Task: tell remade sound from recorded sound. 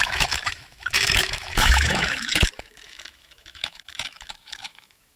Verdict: remade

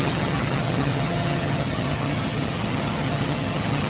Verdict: remade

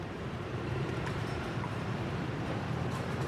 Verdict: remade